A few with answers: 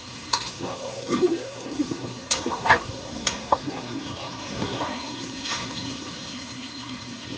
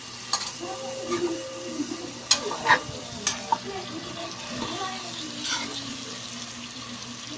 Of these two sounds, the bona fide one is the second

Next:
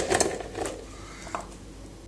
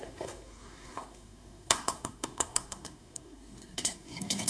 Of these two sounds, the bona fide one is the first